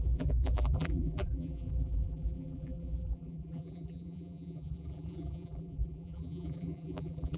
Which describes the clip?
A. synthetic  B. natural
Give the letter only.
A